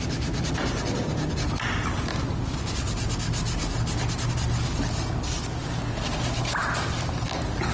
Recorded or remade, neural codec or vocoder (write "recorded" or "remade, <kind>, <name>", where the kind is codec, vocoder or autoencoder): recorded